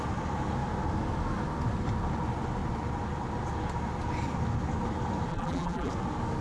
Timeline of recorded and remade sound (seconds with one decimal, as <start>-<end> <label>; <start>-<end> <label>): 0.0-5.3 recorded; 5.3-5.9 remade; 5.9-6.4 recorded